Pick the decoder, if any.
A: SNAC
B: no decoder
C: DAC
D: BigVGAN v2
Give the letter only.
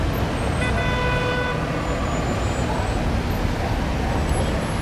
B